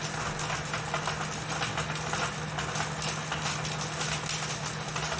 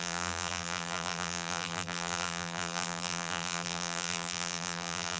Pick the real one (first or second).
first